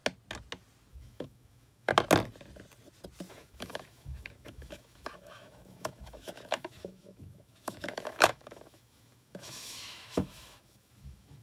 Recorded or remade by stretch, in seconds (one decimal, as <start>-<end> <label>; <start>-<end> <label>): 0.0-0.9 recorded; 0.9-1.9 remade; 1.9-3.3 recorded; 3.3-11.4 remade